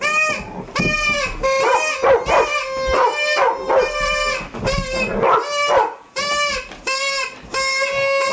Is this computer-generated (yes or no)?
no